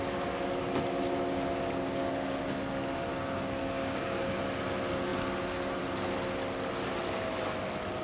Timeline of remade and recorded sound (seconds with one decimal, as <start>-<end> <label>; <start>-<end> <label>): 0.0-3.6 recorded; 3.6-4.4 remade; 4.4-8.0 recorded